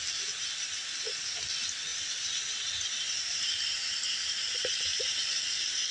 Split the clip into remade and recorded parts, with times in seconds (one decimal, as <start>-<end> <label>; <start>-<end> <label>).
0.0-1.9 recorded; 1.9-5.4 remade; 5.4-5.9 recorded